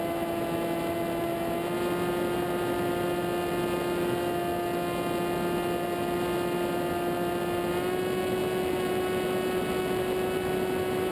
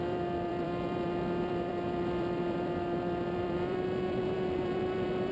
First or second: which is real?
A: first